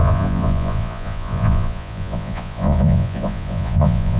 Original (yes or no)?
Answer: no